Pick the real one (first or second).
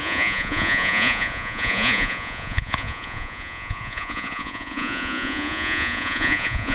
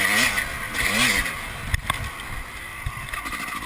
second